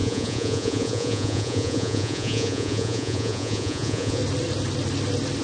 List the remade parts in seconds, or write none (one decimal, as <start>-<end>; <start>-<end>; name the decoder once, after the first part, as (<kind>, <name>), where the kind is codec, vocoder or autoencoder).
0.0-4.2 (vocoder, Vocos)